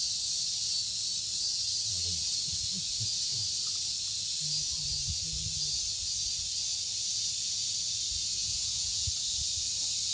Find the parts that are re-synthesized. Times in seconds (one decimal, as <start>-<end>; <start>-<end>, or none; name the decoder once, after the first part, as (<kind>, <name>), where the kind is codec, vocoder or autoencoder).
8.4-9.1 (vocoder, Vocos)